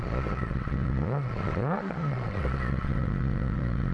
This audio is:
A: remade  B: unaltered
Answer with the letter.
A